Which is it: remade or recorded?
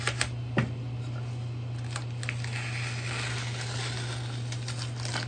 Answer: recorded